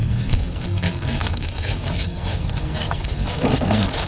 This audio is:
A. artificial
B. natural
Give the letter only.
A